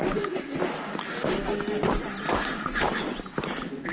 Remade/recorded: recorded